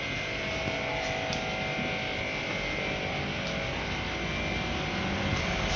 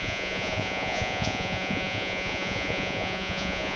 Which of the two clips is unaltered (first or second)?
first